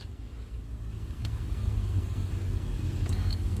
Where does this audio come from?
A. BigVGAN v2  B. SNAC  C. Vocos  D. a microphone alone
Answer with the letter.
B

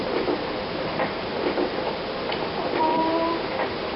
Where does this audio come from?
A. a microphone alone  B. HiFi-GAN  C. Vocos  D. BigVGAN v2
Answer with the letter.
A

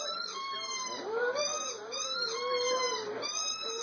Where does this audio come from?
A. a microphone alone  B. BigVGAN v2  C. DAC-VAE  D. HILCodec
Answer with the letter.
A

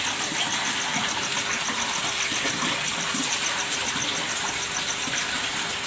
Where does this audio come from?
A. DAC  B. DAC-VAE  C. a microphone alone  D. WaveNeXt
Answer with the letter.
C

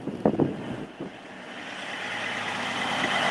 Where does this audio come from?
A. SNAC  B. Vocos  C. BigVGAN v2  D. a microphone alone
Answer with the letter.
D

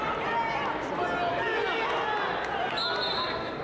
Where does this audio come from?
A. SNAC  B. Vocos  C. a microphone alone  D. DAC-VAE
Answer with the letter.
C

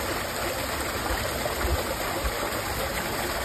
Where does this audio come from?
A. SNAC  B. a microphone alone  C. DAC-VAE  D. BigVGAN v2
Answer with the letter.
B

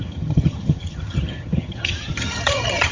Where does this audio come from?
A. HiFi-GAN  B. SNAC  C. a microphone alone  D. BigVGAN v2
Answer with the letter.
A